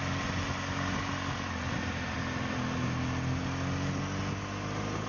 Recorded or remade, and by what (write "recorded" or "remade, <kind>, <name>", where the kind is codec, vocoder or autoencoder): recorded